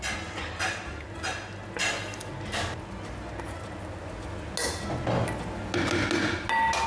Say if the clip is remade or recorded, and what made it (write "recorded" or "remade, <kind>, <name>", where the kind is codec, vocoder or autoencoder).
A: recorded